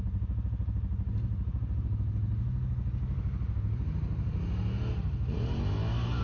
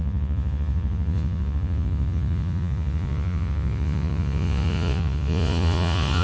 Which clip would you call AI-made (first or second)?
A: second